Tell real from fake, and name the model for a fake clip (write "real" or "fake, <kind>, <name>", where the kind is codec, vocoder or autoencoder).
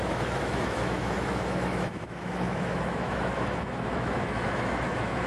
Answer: fake, autoencoder, DAC-VAE